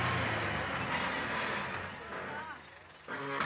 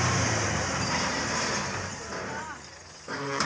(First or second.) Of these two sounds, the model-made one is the second